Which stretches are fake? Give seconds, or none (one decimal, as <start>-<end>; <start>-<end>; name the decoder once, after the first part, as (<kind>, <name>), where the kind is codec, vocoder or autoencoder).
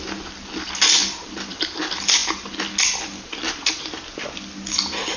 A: none